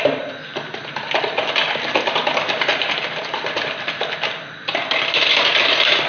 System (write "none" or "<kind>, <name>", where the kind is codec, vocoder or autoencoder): none